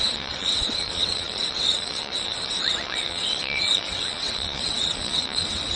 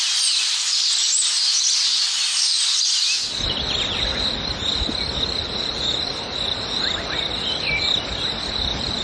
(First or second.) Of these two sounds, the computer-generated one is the first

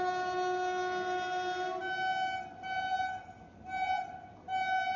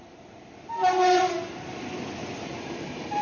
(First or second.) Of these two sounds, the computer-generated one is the second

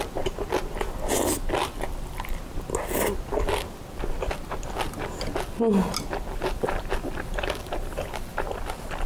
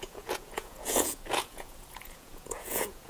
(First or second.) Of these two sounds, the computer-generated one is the second